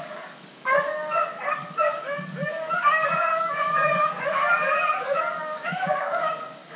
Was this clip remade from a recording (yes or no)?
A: yes